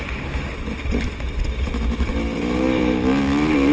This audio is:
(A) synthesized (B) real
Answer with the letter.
B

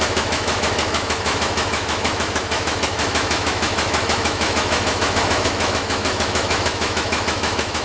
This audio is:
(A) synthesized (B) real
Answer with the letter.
A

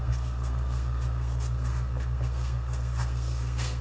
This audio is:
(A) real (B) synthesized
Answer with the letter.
B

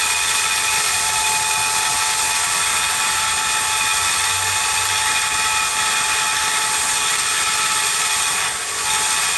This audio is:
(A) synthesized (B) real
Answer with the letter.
B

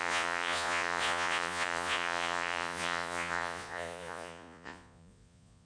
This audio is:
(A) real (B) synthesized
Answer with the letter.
B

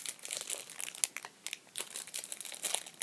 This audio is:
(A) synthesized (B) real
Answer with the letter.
B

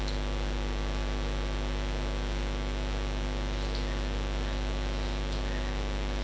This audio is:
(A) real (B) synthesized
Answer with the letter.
A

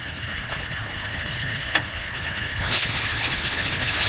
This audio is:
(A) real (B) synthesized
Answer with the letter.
B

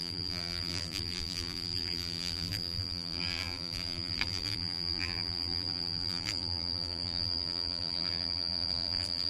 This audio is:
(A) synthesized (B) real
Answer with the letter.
A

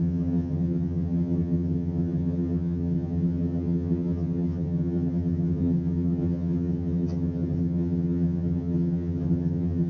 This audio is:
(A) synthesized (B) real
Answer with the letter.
A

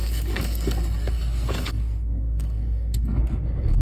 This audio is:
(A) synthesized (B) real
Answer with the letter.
A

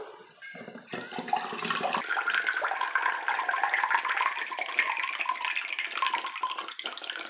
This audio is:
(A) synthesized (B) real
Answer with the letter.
B